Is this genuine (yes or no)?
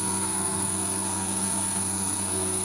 no